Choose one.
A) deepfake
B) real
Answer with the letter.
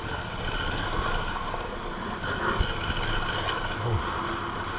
B